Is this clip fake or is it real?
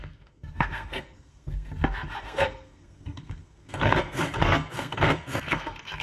fake